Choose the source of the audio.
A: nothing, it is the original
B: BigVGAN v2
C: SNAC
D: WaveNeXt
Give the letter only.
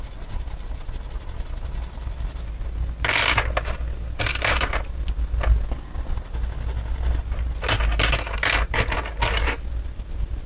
A